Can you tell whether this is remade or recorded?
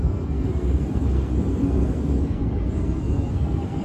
remade